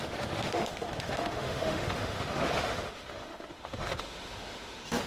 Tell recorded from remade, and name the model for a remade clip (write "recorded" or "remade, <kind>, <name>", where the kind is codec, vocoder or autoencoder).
remade, autoencoder, DAC-VAE